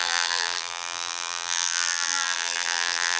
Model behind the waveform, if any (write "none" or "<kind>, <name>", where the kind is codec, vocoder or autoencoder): vocoder, BigVGAN v2